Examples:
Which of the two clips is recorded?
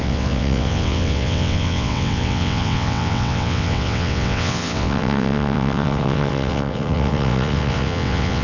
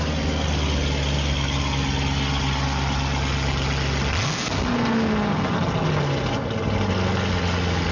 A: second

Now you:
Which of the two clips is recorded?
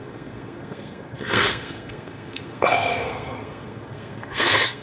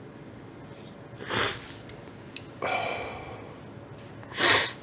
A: second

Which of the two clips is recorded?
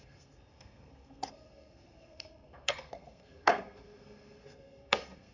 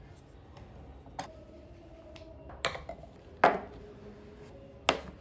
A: second